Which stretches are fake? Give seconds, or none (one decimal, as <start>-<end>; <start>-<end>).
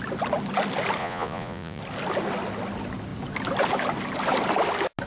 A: 1.0-1.8